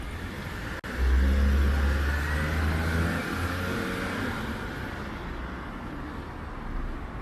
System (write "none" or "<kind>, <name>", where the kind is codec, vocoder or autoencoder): none